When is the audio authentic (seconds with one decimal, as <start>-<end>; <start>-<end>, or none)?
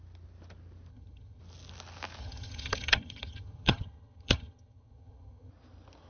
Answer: 0.0-0.9; 1.4-2.2; 5.5-6.1